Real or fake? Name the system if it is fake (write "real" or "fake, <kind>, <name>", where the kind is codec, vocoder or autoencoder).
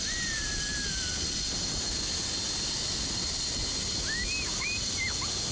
real